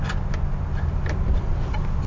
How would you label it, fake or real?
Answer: real